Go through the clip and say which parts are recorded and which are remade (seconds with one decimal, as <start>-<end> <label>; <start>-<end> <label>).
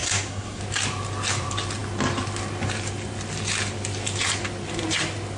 0.0-0.6 remade; 0.6-5.4 recorded